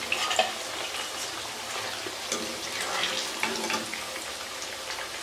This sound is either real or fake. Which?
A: real